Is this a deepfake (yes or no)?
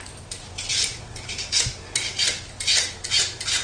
no